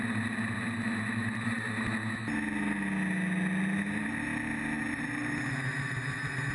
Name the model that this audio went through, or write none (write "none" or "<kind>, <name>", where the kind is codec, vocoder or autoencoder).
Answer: none